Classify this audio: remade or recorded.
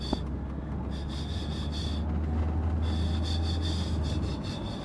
recorded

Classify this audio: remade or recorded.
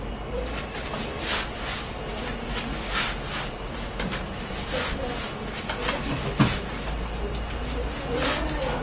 recorded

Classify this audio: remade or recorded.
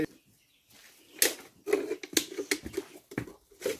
recorded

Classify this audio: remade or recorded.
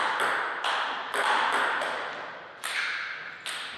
recorded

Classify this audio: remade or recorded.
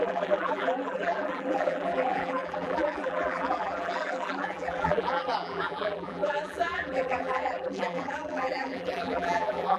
remade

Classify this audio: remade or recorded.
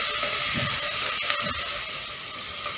remade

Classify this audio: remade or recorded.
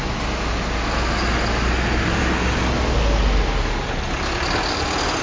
recorded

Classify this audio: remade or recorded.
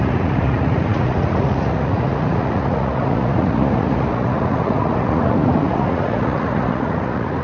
remade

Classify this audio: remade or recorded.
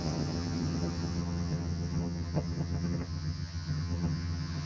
remade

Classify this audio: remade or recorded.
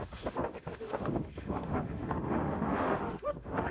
remade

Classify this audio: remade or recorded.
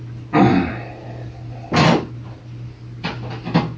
recorded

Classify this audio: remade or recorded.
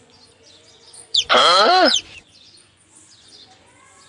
remade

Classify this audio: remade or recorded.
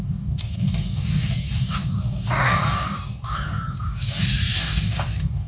remade